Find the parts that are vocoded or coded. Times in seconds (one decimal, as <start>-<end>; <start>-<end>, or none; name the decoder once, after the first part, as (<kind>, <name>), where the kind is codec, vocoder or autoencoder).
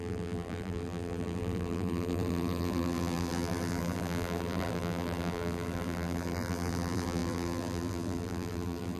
0.0-9.0 (vocoder, BigVGAN v2)